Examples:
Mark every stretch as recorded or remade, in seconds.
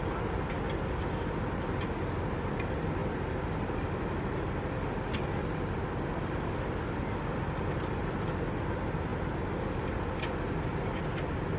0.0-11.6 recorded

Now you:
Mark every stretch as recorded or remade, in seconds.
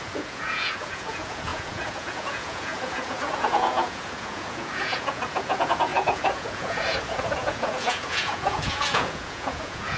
0.0-10.0 remade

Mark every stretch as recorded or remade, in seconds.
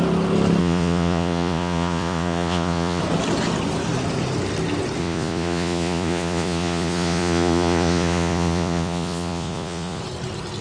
0.0-0.6 recorded; 0.6-3.0 remade; 3.0-5.0 recorded; 5.0-10.0 remade; 10.0-10.6 recorded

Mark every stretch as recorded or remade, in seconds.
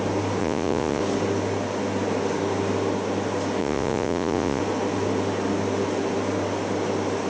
0.0-0.4 recorded; 0.4-1.0 remade; 1.0-3.6 recorded; 3.6-4.6 remade; 4.6-7.3 recorded